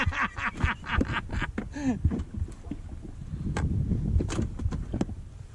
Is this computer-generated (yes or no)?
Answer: no